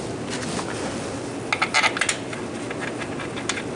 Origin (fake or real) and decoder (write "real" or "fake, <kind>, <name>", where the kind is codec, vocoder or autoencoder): real